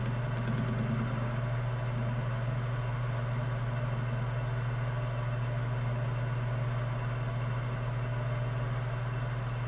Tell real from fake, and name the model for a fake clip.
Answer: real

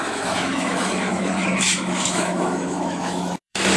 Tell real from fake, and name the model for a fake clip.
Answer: fake, autoencoder, DAC-VAE